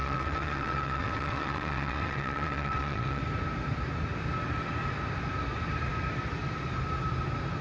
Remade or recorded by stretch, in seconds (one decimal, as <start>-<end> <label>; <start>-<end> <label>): 0.0-3.2 remade; 3.2-7.6 recorded